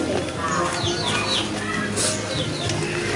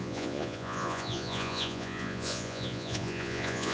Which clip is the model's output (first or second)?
second